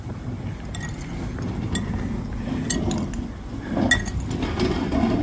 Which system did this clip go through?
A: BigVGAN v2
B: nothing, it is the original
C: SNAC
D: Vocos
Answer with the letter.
B